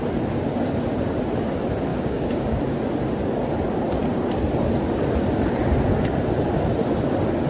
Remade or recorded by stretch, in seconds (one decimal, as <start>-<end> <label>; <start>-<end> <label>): 0.0-1.9 recorded; 1.9-2.6 remade; 2.6-7.5 recorded